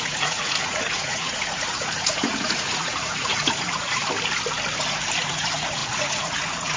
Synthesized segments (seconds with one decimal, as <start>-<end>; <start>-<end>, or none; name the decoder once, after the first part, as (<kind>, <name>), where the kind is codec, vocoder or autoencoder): 0.0-4.0 (vocoder, Vocos); 5.2-6.8